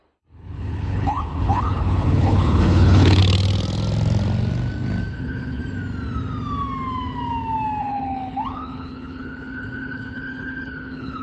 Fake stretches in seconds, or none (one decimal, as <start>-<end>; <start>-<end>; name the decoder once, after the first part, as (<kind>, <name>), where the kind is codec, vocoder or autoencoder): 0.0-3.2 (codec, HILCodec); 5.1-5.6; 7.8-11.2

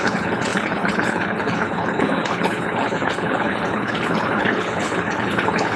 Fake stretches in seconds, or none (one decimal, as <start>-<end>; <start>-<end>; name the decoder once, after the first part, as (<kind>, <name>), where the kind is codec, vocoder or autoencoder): 0.0-5.8 (codec, HILCodec)

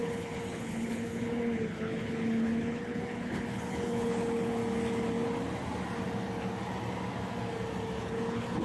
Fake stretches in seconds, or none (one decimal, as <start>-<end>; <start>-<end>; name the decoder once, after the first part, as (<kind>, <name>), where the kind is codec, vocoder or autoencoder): 0.0-4.6 (codec, HILCodec); 8.0-8.6

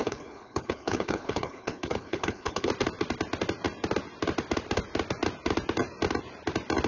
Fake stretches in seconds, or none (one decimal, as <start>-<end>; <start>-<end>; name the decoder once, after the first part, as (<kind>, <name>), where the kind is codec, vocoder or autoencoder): 0.0-2.7 (codec, HILCodec)

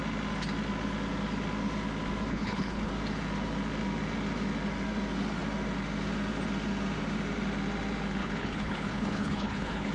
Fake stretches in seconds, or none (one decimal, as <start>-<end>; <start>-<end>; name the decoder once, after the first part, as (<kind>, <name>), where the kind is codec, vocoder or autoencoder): 2.3-2.9 (codec, HILCodec); 8.2-9.9

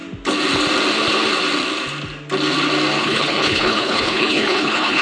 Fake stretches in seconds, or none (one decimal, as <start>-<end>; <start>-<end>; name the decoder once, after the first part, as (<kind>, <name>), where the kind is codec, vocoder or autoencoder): 3.0-5.0 (codec, HILCodec)

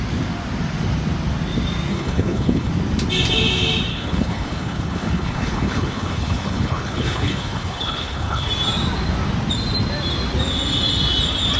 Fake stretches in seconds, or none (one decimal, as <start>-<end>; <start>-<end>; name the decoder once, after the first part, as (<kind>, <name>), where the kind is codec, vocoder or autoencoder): 1.9-2.7 (codec, HILCodec); 3.9-8.5

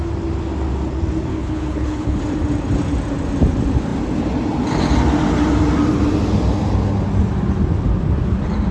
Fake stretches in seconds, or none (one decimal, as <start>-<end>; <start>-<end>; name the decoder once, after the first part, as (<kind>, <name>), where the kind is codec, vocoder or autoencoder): 1.3-2.2 (codec, HILCodec)